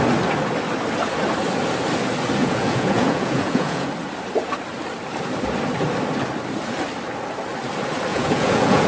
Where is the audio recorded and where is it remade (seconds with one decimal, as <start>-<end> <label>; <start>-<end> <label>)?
0.0-2.4 recorded; 2.4-3.9 remade; 3.9-8.1 recorded; 8.1-8.9 remade